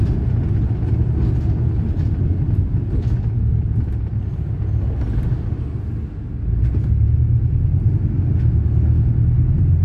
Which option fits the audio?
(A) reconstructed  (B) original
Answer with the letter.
B